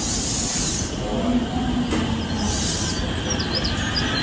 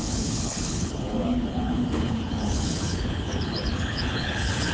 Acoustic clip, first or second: first